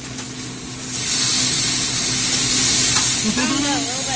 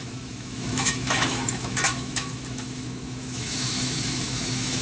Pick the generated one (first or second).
second